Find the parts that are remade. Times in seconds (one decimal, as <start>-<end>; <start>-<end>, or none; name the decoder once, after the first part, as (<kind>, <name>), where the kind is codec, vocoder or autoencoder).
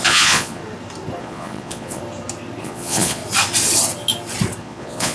0.0-0.6 (vocoder, Vocos); 1.2-2.0; 2.6-3.2; 4.6-5.1